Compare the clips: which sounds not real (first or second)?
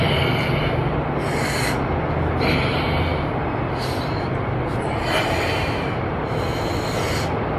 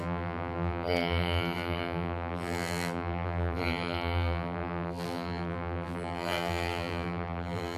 second